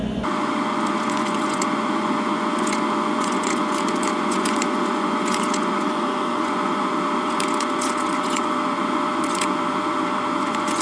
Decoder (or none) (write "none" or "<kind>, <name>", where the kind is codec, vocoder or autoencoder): vocoder, Vocos